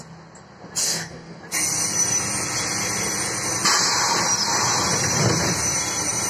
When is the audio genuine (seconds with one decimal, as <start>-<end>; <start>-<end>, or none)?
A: 0.0-0.8; 1.4-6.3

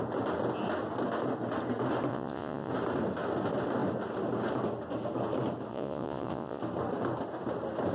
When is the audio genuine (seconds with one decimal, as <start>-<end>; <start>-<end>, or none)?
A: 0.0-2.1; 2.7-5.7; 6.6-7.9

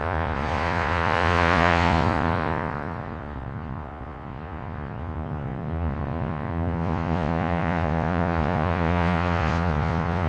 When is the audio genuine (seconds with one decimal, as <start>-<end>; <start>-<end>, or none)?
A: none

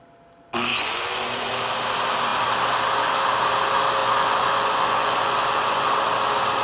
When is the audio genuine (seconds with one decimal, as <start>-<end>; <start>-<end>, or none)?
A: 0.0-0.7; 1.5-4.0; 5.9-6.6